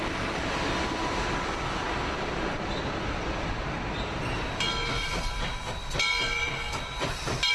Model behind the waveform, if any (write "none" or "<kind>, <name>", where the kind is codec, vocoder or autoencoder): vocoder, BigVGAN v2